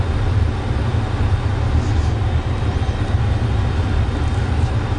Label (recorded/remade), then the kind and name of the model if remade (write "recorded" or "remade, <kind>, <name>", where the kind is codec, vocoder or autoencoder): recorded